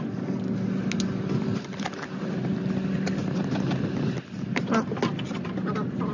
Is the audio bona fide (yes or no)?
yes